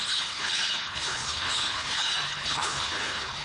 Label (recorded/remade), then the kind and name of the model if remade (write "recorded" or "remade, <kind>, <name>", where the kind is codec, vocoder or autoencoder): remade, codec, HILCodec